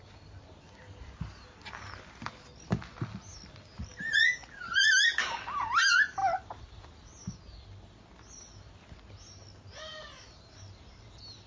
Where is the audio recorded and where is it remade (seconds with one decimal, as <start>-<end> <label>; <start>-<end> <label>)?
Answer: 0.0-11.5 recorded